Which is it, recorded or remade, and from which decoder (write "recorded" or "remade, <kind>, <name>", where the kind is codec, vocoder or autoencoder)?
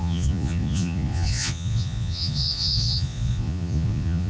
remade, vocoder, Vocos